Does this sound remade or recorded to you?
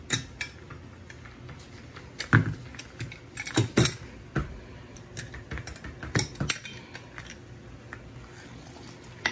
recorded